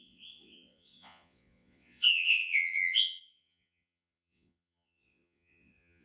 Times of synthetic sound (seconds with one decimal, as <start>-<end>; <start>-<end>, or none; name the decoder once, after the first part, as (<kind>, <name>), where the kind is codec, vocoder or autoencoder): 0.0-6.0 (vocoder, Vocos)